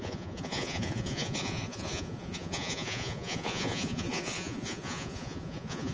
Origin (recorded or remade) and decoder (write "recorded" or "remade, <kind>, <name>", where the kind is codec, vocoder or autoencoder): remade, vocoder, Vocos